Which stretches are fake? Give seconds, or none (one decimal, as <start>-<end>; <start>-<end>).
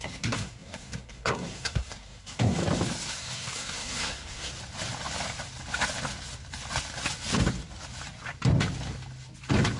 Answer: 0.0-2.6; 3.1-4.5